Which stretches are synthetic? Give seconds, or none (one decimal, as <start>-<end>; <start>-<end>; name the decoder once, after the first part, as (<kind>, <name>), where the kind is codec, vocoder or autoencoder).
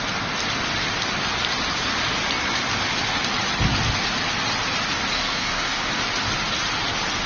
5.1-5.9 (codec, SNAC)